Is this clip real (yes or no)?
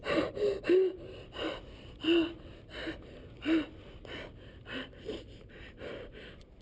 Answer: yes